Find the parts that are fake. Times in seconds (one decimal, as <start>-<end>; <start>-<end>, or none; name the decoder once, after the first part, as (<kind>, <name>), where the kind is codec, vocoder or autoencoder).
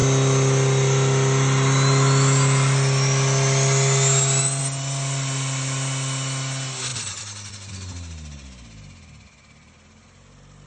6.9-7.7 (vocoder, BigVGAN v2)